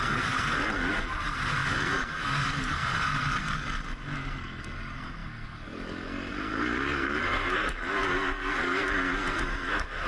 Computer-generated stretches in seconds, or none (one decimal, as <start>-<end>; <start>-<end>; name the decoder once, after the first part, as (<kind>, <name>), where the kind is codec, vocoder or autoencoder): 0.0-10.1 (codec, SNAC)